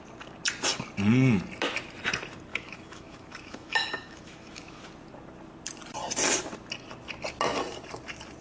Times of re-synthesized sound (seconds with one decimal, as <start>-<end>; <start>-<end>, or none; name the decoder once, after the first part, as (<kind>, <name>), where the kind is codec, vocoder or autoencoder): 2.5-4.8 (autoencoder, DAC-VAE)

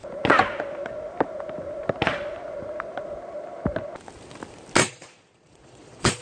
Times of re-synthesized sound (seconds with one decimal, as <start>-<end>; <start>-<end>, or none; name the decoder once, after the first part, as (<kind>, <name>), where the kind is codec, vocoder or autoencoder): 4.8-6.2 (vocoder, Vocos)

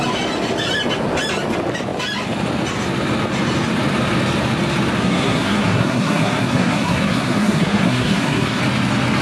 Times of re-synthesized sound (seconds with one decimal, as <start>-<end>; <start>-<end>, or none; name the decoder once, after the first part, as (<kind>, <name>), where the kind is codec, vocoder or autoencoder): 5.0-8.6 (codec, SNAC)

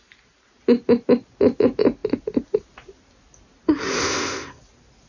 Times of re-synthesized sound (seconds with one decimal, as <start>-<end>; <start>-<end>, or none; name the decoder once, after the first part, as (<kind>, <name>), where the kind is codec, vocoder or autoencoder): 4.0-4.6 (codec, ZipCodec)

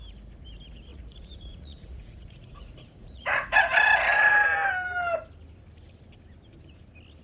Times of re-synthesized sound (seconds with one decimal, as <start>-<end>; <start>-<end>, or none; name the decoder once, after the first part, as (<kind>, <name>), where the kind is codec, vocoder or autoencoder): 0.9-3.6 (vocoder, Vocos)